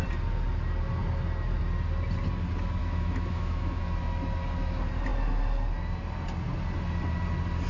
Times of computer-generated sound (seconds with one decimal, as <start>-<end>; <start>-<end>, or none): 2.8-3.8